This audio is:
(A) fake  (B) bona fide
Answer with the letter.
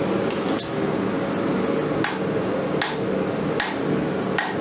B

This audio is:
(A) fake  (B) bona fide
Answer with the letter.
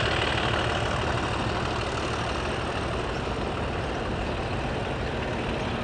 B